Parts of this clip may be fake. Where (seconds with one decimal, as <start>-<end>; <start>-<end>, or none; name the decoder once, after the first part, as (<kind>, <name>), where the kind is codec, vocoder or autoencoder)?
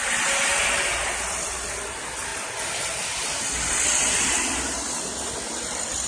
0.0-6.1 (vocoder, BigVGAN v2)